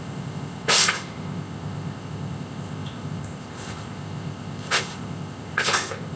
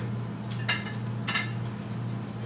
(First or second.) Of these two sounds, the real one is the second